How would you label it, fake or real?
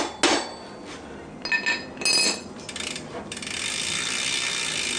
real